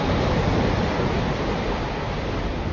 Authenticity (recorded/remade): recorded